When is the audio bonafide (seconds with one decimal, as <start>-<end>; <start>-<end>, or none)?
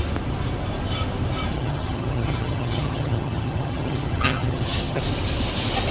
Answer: 0.0-1.5; 5.0-5.9